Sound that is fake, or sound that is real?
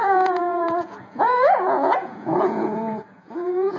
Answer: fake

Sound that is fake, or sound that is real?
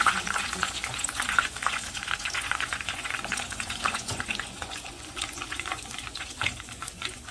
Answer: fake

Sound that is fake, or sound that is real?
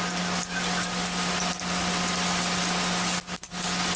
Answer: real